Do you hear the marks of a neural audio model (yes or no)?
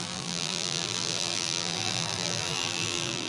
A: yes